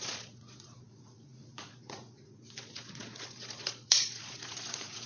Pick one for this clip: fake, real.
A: fake